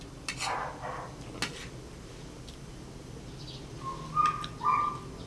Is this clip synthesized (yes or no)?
no